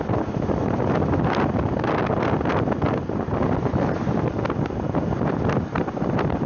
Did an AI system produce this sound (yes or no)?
no